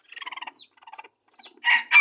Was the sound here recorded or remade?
recorded